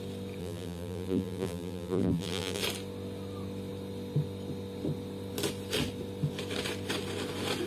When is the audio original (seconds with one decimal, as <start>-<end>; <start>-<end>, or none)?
0.0-0.4; 2.6-7.7